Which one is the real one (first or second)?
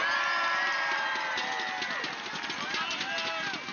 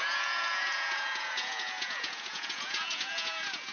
first